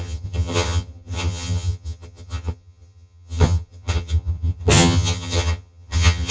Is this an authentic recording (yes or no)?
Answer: no